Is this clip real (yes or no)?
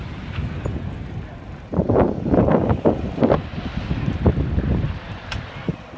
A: yes